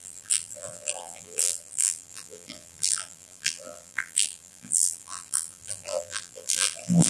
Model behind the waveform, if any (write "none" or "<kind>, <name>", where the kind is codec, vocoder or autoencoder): vocoder, BigVGAN v2